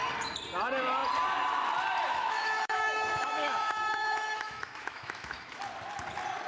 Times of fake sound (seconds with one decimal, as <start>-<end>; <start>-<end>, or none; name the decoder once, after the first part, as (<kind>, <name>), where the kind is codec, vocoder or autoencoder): 2.1-5.6 (autoencoder, DAC-VAE)